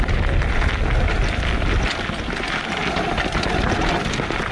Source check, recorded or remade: recorded